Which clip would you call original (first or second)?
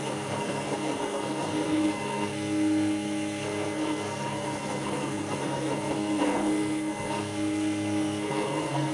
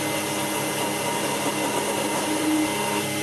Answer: second